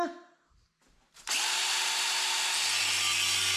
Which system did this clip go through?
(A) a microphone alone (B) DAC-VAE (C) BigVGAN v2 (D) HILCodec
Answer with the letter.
A